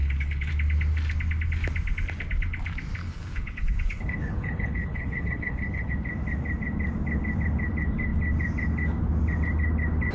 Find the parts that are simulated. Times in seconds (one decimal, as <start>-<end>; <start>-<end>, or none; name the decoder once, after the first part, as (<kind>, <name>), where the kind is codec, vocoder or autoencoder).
0.0-0.5 (codec, HILCodec); 3.0-5.9